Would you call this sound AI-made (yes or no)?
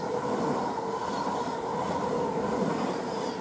no